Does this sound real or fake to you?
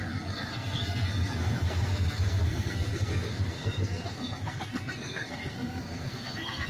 fake